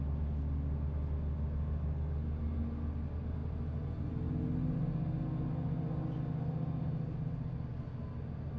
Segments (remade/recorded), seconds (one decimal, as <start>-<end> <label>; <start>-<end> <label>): 0.0-8.6 recorded